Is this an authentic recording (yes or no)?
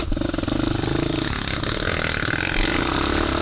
yes